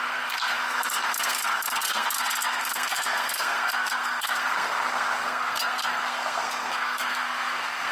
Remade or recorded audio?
remade